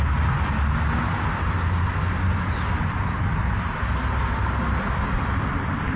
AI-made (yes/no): no